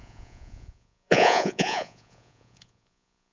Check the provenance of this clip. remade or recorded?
remade